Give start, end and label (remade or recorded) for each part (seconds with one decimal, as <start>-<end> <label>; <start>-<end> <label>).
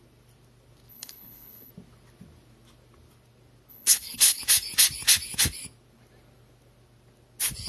0.0-0.9 recorded; 0.9-1.7 remade; 1.7-3.7 recorded; 3.7-4.4 remade; 4.4-7.7 recorded